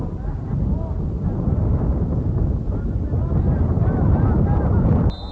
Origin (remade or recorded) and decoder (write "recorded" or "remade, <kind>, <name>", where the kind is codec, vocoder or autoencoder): recorded